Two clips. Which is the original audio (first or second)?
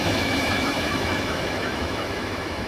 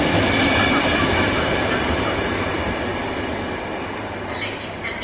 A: second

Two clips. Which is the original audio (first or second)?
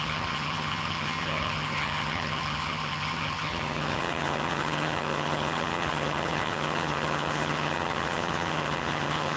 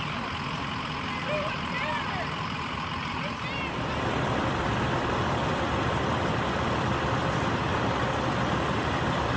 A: second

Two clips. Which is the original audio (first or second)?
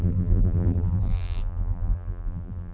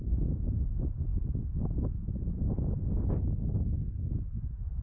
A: second